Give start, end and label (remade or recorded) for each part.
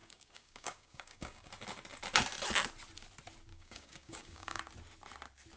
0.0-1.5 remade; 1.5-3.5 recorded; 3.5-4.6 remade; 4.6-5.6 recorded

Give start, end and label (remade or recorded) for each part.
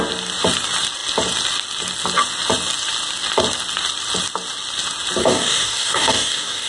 0.0-5.2 recorded; 5.2-6.7 remade